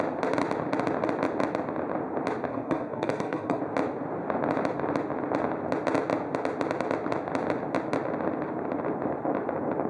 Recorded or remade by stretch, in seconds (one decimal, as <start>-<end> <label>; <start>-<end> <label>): 0.0-2.5 recorded; 2.5-3.6 remade; 3.6-9.9 recorded